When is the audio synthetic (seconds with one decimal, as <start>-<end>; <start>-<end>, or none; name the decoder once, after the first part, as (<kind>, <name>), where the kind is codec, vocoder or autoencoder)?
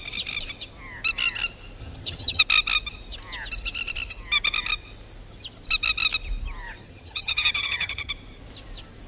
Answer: 1.8-2.4 (vocoder, HiFi-GAN); 6.8-8.1